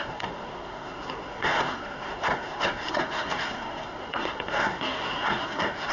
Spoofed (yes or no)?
yes